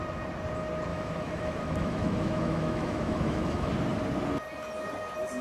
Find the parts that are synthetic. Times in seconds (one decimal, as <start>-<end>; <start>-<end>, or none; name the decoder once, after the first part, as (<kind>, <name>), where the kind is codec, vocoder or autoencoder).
0.9-3.7 (autoencoder, DAC-VAE)